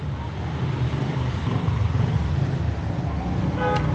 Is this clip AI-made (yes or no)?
no